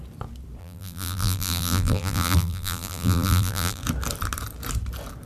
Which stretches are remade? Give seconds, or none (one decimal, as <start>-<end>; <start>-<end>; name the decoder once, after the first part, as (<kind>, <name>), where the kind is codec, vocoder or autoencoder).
0.6-3.8 (vocoder, BigVGAN v2)

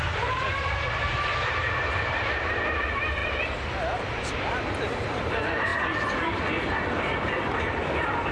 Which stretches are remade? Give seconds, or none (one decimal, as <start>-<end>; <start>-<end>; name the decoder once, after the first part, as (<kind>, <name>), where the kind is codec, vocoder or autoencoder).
0.0-3.2 (vocoder, BigVGAN v2); 4.0-8.3

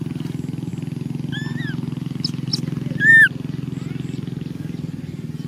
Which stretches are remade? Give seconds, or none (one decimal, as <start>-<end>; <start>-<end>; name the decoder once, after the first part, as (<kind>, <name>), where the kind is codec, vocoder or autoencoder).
none

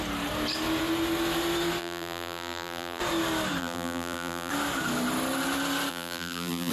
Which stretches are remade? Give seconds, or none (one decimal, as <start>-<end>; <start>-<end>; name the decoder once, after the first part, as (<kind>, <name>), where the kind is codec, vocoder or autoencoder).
1.8-3.0 (vocoder, BigVGAN v2); 3.6-4.5; 5.9-6.7

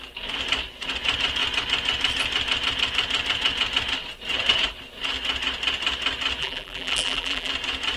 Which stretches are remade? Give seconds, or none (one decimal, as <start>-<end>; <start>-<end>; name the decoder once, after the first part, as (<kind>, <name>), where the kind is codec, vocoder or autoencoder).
6.4-7.5 (vocoder, BigVGAN v2)